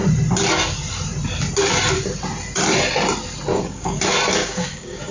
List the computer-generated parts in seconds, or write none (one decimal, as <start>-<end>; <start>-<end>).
3.5-4.0; 4.4-5.1

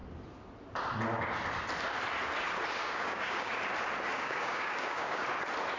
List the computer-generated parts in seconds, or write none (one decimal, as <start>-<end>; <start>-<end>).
2.8-3.5; 4.1-5.2

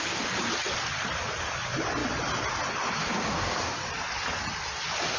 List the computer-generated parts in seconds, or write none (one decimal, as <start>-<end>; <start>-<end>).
3.0-3.7

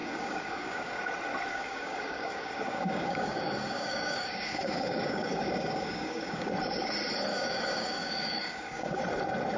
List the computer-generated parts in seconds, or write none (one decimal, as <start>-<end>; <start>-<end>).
0.0-1.0; 1.5-6.5; 7.3-9.0